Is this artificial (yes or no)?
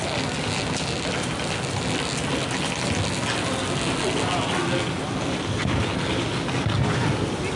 no